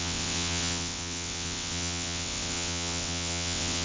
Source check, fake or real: fake